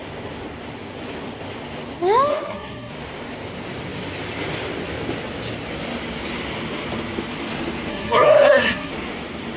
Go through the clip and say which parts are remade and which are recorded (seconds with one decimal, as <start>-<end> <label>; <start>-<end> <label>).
0.0-2.3 recorded; 2.3-2.9 remade; 2.9-7.9 recorded; 7.9-8.9 remade; 8.9-9.6 recorded